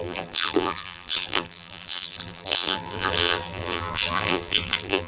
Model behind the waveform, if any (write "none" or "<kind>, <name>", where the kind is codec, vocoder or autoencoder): vocoder, BigVGAN v2